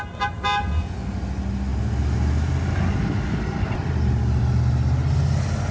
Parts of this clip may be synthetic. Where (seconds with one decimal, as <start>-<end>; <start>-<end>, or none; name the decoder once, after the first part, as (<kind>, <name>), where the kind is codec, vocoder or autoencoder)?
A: none